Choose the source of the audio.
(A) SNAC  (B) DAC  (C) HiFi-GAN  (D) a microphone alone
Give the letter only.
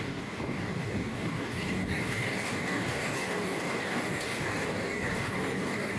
B